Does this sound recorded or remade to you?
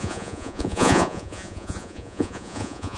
remade